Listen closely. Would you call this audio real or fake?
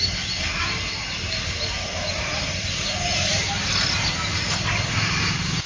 real